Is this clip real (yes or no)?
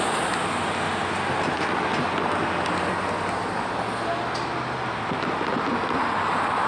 yes